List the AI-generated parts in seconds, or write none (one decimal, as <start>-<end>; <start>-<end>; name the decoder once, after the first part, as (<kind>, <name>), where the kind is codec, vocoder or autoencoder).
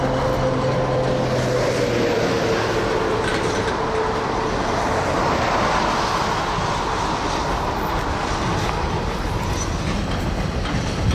none